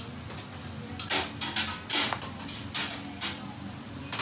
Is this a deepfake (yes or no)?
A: no